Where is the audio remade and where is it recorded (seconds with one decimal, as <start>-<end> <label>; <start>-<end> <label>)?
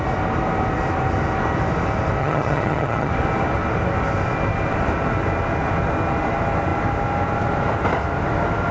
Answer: 0.0-2.2 recorded; 2.2-3.1 remade; 3.1-8.7 recorded